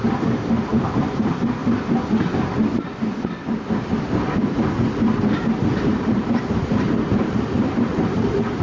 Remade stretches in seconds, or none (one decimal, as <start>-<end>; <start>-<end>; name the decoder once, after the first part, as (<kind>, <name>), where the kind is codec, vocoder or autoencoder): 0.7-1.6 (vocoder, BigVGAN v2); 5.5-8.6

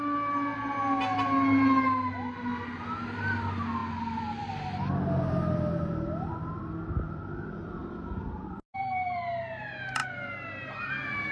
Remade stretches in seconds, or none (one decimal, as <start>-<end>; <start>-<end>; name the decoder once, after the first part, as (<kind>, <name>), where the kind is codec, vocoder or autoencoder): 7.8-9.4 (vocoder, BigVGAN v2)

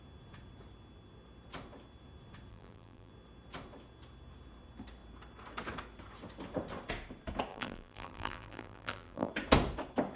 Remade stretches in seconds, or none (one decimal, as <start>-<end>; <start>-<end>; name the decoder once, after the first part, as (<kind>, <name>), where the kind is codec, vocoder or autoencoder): 2.5-3.1 (vocoder, BigVGAN v2); 7.5-9.3

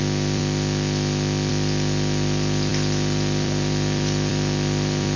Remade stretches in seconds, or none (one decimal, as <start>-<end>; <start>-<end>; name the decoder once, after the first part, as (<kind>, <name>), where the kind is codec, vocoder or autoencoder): 0.0-0.4 (vocoder, BigVGAN v2); 1.5-5.2